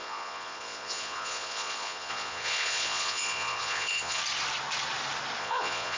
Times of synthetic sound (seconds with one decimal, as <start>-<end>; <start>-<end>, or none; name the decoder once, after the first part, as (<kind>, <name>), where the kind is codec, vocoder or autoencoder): 0.0-4.2 (vocoder, Vocos); 5.4-6.0